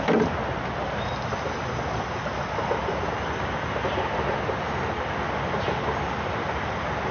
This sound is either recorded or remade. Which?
recorded